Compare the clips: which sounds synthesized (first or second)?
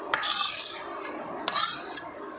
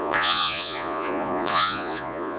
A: second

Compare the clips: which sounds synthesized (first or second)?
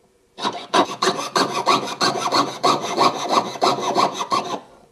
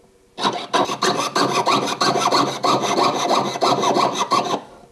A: first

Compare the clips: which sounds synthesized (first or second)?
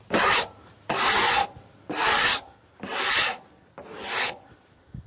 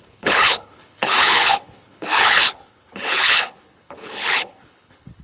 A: second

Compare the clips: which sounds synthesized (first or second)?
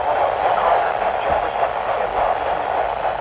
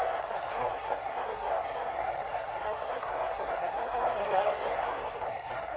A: second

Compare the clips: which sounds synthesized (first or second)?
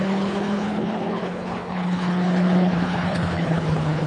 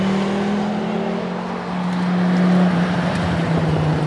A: first